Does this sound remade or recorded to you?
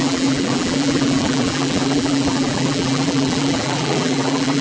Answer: remade